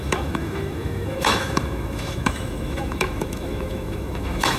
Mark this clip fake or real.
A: fake